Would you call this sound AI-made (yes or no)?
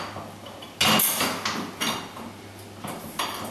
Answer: no